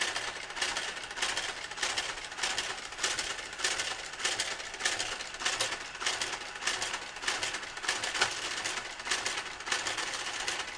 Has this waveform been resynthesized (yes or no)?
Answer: no